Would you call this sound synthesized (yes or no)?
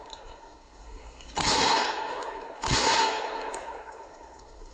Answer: yes